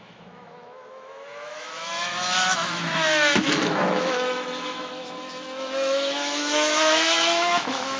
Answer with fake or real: fake